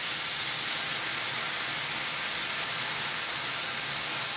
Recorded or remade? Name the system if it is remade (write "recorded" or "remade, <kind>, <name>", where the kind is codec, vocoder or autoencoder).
recorded